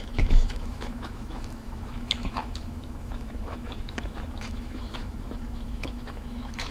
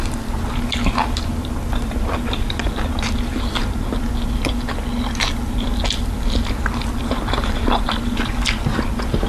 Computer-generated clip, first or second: first